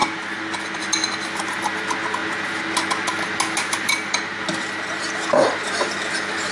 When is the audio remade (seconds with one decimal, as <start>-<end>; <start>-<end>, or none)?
none